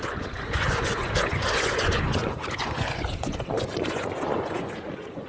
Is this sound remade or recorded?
remade